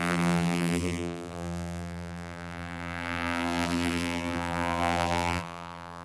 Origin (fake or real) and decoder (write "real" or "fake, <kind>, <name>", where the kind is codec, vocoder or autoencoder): fake, vocoder, BigVGAN v2